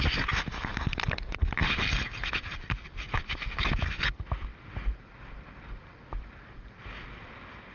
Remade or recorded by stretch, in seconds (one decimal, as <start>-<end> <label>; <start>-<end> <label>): 0.0-7.7 recorded

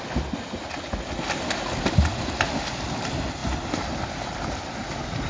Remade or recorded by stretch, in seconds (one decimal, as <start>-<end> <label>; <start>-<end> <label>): 0.0-5.3 recorded

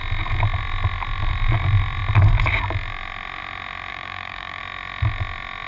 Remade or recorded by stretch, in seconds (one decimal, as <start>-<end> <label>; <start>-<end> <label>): 0.0-3.9 recorded; 3.9-4.6 remade; 4.6-5.7 recorded

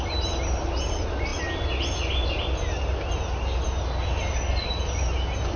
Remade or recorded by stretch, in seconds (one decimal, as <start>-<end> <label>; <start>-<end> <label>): 0.0-5.6 recorded

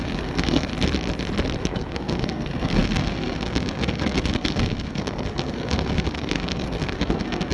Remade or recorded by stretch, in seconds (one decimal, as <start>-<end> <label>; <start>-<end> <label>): 0.0-0.7 remade; 0.7-1.6 recorded; 1.6-7.5 remade